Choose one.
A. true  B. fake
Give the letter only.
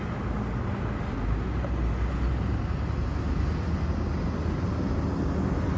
A